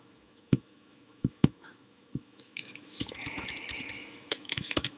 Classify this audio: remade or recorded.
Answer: remade